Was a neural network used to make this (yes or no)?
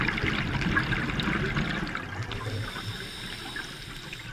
no